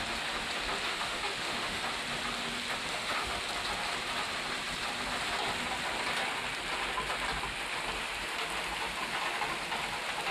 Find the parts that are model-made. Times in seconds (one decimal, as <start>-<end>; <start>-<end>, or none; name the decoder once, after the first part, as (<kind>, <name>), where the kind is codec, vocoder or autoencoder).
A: 0.9-1.8 (autoencoder, DAC-VAE); 2.9-3.4